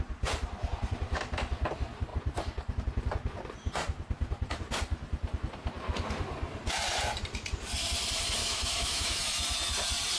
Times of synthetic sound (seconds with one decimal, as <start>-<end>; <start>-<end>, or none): 8.4-9.2